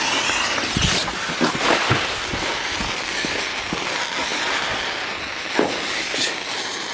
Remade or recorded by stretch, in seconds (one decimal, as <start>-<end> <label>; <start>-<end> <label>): 0.0-6.9 recorded